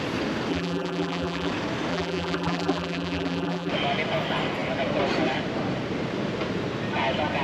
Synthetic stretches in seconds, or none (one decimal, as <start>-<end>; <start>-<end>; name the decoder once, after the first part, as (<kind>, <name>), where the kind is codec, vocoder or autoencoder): 0.5-1.5 (vocoder, BigVGAN v2); 1.9-3.7